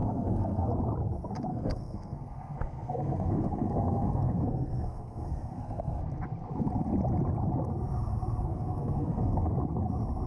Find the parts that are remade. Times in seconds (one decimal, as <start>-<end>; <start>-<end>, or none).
0.0-0.7; 1.5-6.0; 8.5-9.5